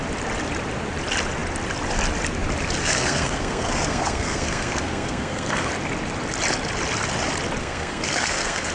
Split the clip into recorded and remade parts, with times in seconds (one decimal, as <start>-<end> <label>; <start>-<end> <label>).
0.0-2.8 recorded; 2.8-5.7 remade; 5.7-7.6 recorded; 7.6-8.7 remade